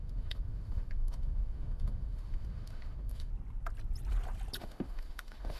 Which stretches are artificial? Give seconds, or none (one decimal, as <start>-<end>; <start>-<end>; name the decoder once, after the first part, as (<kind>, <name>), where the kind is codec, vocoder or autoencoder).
0.0-3.3 (autoencoder, DAC-VAE); 4.6-5.6